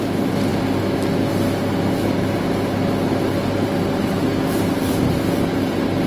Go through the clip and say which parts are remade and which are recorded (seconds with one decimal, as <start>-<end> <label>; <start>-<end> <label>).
0.0-6.1 recorded

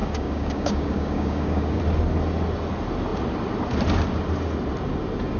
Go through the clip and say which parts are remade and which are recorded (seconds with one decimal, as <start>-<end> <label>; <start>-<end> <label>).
0.0-1.8 remade; 1.8-5.4 recorded

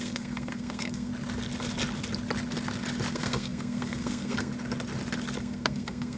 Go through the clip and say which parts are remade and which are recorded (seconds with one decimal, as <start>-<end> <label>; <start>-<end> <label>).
0.0-1.1 remade; 1.1-3.1 recorded; 3.1-4.5 remade; 4.5-5.4 recorded; 5.4-6.2 remade

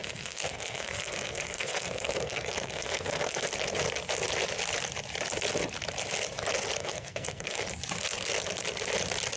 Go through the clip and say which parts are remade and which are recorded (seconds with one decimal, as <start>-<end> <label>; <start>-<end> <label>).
0.0-3.5 remade; 3.5-6.8 recorded; 6.8-7.6 remade; 7.6-9.4 recorded